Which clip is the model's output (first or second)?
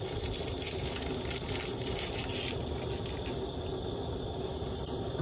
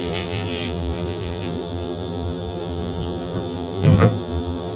second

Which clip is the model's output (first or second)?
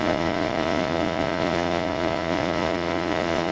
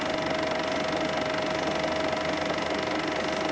first